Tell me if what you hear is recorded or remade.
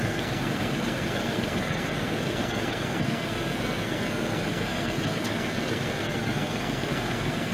remade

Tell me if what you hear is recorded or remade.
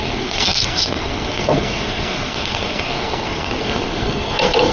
remade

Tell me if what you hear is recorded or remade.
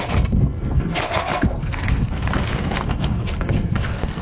remade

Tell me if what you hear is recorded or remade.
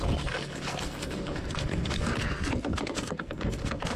remade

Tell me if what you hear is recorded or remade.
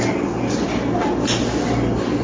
recorded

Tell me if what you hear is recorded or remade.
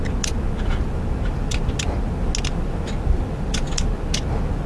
recorded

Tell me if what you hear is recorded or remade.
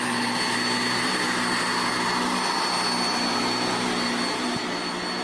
recorded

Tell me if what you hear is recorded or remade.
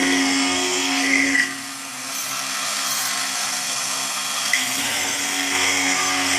remade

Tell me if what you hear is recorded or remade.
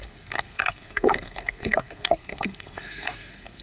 remade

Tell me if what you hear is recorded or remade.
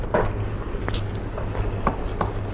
recorded